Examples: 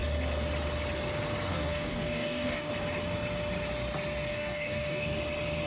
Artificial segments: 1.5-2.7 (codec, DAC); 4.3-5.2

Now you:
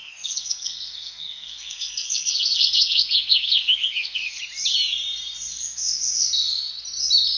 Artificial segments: 0.0-4.4 (codec, SNAC); 5.5-6.7

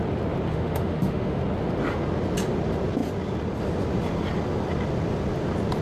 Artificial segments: 0.5-1.4 (autoencoder, DAC-VAE)

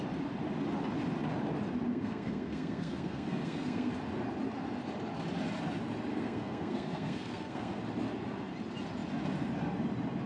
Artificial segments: 1.9-3.9 (codec, SNAC); 6.1-7.8